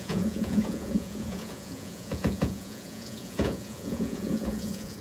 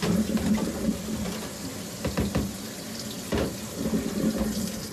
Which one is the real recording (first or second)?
second